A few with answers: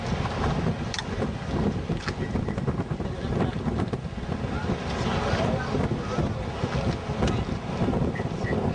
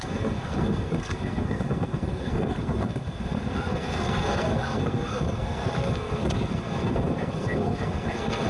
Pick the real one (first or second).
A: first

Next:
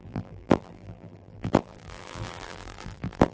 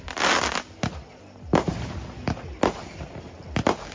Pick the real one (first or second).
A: second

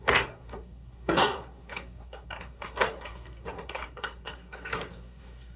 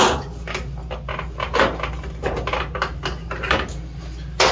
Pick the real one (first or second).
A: second